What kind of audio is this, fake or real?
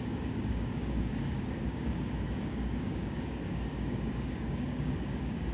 fake